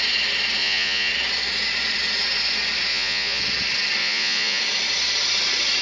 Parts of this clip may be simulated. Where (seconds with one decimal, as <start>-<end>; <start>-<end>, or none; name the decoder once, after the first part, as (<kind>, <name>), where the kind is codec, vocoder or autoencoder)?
0.6-1.1 (vocoder, Vocos); 2.9-3.4; 4.0-4.6